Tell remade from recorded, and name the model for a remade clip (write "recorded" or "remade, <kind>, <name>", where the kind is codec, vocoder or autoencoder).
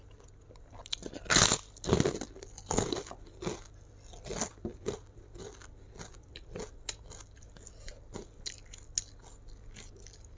recorded